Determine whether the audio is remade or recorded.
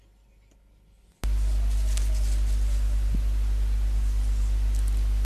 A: recorded